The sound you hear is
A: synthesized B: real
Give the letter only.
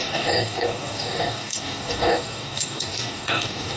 A